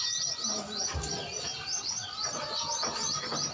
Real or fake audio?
real